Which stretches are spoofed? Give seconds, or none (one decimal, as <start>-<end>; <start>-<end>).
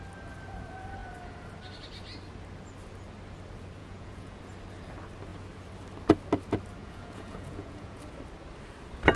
3.8-4.4; 6.8-8.0